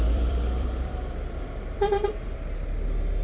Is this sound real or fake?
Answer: fake